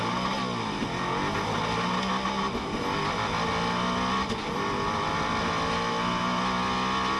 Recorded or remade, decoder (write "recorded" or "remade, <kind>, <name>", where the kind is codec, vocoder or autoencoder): recorded